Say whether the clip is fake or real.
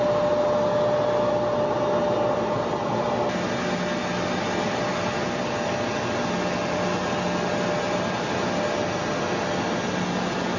real